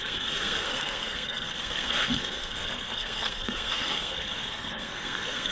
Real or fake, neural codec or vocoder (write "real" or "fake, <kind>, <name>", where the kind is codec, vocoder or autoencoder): fake, codec, SNAC